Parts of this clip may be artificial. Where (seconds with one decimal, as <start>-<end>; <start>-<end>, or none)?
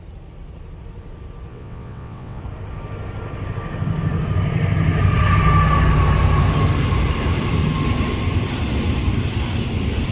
1.5-2.4